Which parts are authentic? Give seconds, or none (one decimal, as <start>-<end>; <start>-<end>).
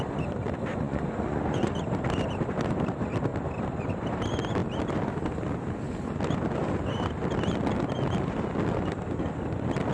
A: 0.0-0.7; 1.7-9.9